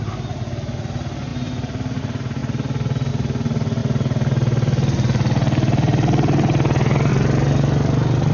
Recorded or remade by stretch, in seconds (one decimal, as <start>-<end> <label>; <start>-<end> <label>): 0.0-8.3 recorded